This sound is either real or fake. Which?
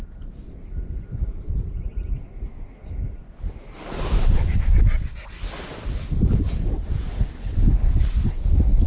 real